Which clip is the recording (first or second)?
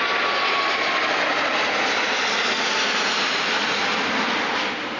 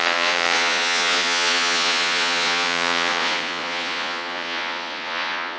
first